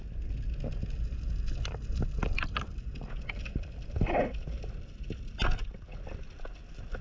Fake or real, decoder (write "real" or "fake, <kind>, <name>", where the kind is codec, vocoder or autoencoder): real